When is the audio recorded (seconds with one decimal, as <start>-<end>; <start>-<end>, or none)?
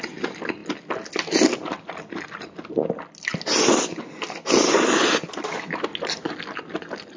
0.0-7.2